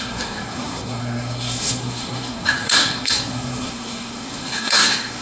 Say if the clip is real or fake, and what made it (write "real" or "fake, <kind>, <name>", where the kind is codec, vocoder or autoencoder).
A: fake, codec, SNAC